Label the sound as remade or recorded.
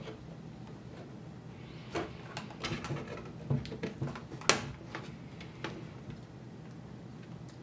recorded